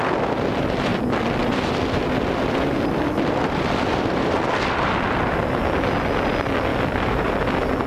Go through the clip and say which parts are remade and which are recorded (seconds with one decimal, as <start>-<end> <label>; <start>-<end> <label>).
0.0-0.9 recorded; 0.9-5.6 remade; 5.6-6.7 recorded; 6.7-7.4 remade; 7.4-7.9 recorded